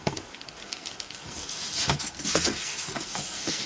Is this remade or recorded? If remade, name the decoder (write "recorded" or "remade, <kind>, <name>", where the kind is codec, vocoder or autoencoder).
remade, codec, SNAC